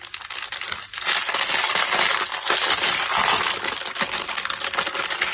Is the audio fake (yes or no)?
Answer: no